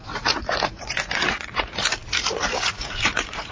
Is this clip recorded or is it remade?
remade